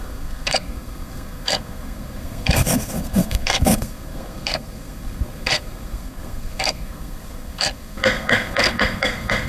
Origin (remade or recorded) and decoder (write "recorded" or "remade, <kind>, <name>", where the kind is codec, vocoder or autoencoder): remade, codec, SNAC